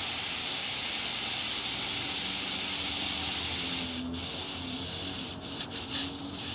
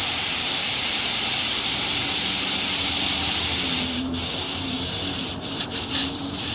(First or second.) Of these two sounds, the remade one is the second